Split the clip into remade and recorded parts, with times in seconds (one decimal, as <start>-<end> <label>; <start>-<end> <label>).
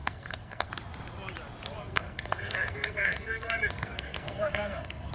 0.0-0.7 remade; 0.7-1.8 recorded; 1.8-5.1 remade